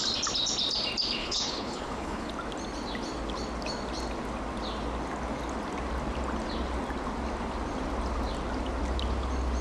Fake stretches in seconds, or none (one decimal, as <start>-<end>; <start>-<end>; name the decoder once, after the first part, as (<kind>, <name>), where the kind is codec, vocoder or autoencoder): 1.2-2.3 (codec, HILCodec)